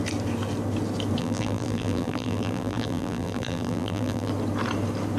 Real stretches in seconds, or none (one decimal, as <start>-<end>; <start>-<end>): 0.0-1.2; 4.3-5.2